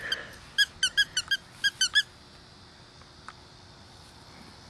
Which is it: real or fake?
real